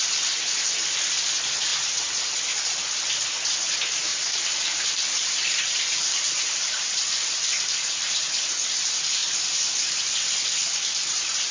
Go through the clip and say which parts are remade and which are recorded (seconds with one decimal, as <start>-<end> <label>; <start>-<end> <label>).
0.0-4.1 recorded; 4.1-8.3 remade; 8.3-11.5 recorded